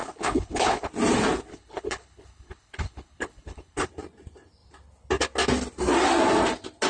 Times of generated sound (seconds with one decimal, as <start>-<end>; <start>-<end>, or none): 0.0-0.9; 1.5-3.9

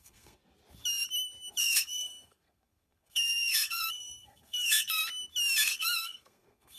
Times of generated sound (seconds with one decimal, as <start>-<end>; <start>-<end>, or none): 0.0-0.4; 1.6-5.0; 5.6-6.8

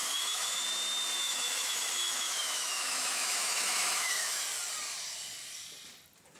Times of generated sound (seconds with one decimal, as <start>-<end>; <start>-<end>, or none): 0.0-0.6; 1.2-4.4

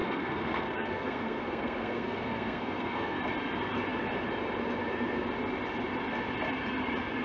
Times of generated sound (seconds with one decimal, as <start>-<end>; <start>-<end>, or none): 0.0-3.2

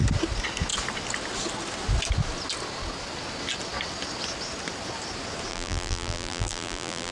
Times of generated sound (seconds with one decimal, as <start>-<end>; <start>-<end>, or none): 5.5-7.1

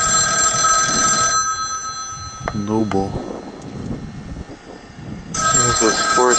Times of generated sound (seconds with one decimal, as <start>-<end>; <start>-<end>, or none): 4.5-6.4

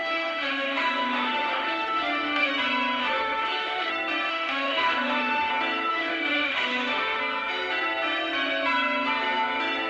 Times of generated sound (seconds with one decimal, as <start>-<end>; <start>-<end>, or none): 0.0-2.5; 3.0-3.9; 4.3-5.5; 5.9-7.2

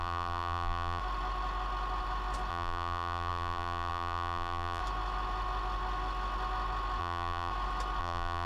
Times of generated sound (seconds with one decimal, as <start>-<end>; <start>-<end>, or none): 0.0-1.0; 2.5-4.8; 7.0-7.5; 8.0-8.5